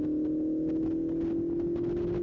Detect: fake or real real